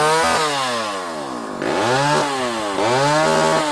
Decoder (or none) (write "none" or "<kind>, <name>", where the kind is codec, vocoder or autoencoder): none